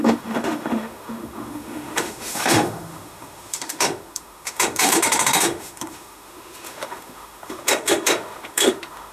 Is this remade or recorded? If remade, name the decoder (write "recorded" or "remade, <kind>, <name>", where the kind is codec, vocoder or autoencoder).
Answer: remade, autoencoder, DAC-VAE